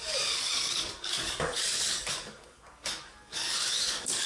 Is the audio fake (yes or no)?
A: yes